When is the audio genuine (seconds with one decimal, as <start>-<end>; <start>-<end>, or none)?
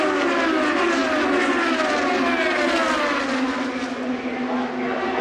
0.0-5.2